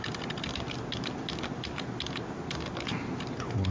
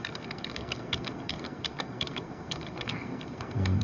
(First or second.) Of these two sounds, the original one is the first